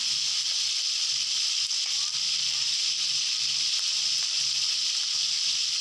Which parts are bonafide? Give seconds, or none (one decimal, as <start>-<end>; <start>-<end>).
0.0-5.8